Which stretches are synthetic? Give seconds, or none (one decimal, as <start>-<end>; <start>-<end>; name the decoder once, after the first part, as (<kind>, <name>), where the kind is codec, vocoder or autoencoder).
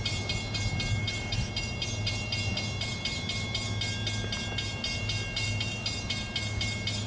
1.0-1.5 (autoencoder, DAC-VAE)